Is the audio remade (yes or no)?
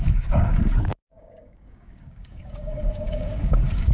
yes